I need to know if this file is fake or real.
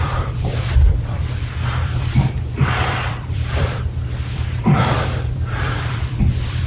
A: fake